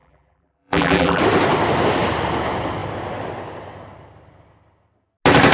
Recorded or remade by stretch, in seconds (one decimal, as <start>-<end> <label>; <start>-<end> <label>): 0.0-1.2 remade; 1.2-5.5 recorded